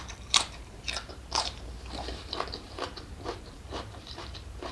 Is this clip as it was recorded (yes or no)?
no